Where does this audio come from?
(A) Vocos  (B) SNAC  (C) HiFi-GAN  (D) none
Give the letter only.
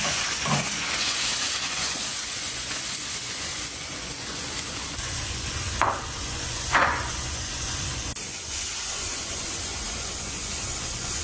A